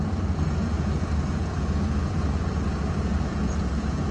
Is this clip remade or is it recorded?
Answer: remade